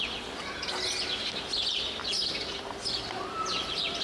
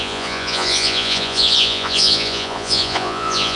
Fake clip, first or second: second